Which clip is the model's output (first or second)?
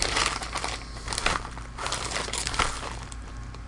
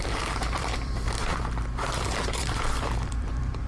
second